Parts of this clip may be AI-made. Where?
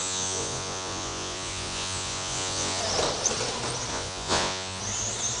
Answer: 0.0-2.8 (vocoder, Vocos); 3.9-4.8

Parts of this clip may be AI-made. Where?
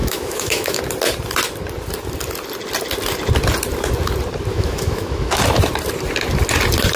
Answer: 0.0-0.8 (autoencoder, DAC-VAE); 4.5-5.4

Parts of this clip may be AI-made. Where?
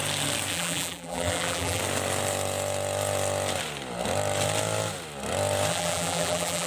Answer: 0.5-1.8 (vocoder, BigVGAN v2); 5.7-6.7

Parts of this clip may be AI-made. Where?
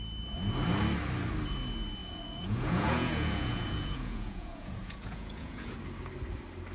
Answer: 2.0-5.8 (vocoder, Vocos)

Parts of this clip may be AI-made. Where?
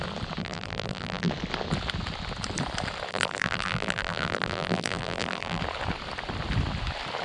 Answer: 0.4-1.3 (vocoder, BigVGAN v2); 3.1-5.6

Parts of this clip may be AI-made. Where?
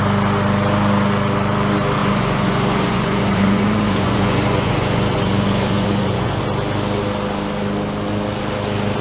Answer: 2.0-6.4 (vocoder, Vocos)